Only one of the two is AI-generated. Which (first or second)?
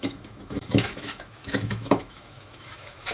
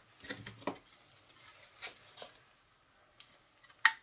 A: first